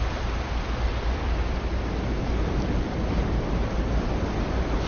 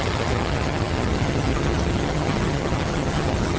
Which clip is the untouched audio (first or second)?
first